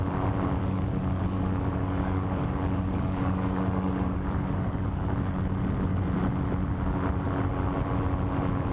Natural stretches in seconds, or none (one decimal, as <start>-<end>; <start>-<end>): 0.0-0.6; 5.4-8.7